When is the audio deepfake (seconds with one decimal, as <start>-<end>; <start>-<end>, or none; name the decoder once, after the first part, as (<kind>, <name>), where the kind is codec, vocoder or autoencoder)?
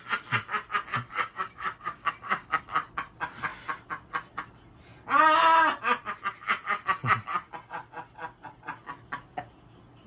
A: 0.9-2.6 (codec, DAC)